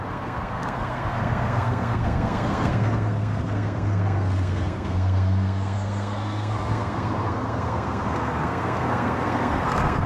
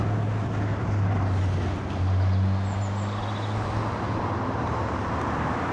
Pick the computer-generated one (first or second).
first